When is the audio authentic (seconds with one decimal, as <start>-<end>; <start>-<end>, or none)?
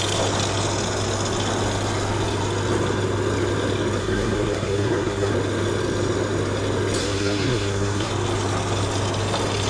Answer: 0.0-4.0; 5.3-7.0; 8.1-9.7